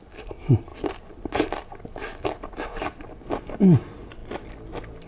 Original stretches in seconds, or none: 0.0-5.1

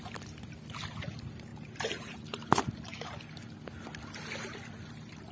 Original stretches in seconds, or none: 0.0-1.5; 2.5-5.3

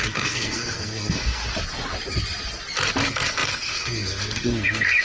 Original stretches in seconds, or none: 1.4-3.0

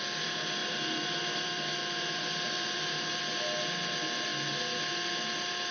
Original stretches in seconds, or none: 0.0-0.6; 3.2-5.7

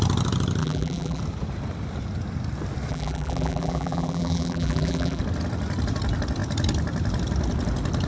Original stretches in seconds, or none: 0.0-0.6; 1.2-2.9; 5.2-8.1

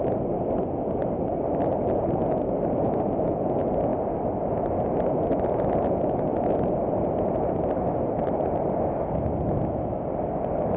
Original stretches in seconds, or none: 0.0-10.8

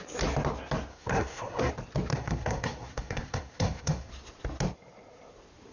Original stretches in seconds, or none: 0.0-0.9; 1.7-2.1; 4.1-5.7